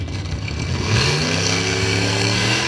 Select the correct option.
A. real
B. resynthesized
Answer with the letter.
B